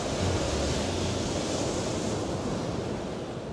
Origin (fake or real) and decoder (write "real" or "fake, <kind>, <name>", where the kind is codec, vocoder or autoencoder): real